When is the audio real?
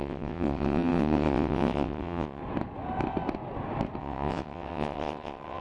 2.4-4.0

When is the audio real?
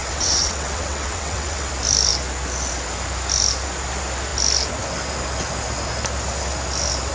1.7-7.1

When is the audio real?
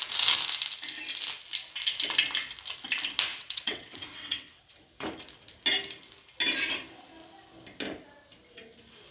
0.0-3.3; 4.7-9.1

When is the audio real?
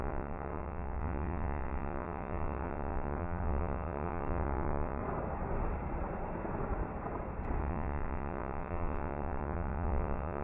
5.0-7.6